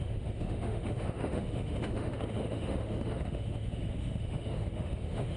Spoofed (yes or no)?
yes